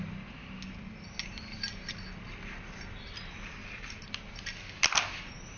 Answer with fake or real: real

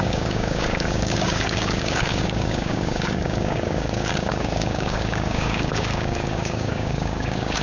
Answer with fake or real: fake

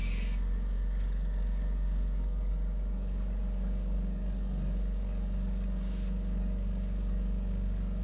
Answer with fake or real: fake